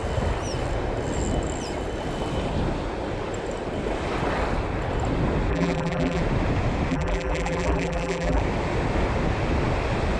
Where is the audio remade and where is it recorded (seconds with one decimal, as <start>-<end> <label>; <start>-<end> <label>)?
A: 0.0-5.5 recorded; 5.5-6.2 remade; 6.2-6.9 recorded; 6.9-8.4 remade; 8.4-10.2 recorded